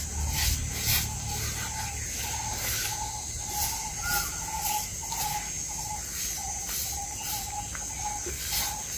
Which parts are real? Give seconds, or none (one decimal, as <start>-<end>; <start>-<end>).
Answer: 0.0-9.0